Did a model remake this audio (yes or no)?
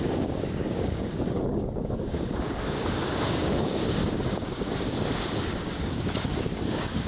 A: yes